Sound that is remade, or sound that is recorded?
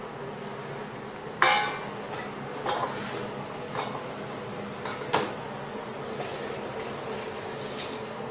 recorded